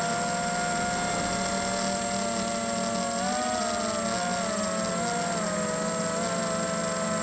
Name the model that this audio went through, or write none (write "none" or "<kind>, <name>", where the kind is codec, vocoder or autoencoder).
none